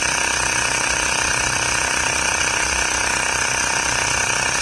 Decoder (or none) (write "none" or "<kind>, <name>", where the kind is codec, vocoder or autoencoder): none